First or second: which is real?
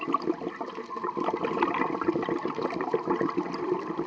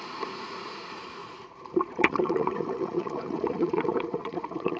first